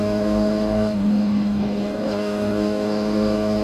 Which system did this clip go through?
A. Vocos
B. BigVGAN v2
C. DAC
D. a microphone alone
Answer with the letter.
C